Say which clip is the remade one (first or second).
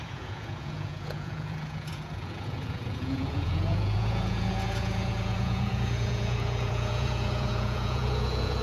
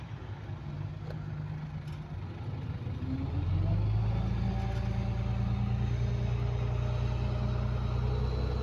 first